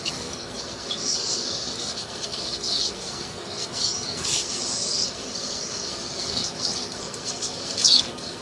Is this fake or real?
fake